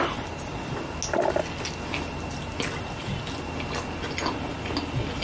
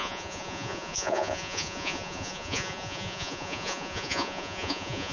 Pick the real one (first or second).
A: first